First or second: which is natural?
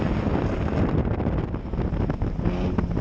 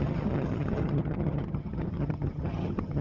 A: first